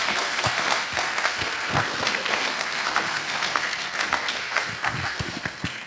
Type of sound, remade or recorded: remade